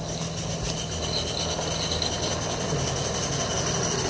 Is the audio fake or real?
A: real